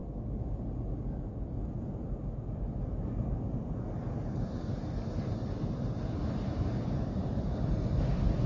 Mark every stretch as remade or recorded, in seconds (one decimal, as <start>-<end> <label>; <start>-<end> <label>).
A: 0.0-8.5 recorded